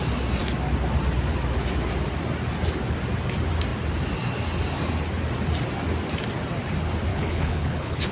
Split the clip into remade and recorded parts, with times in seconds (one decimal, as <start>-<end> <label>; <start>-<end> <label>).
0.0-7.1 recorded; 7.1-8.1 remade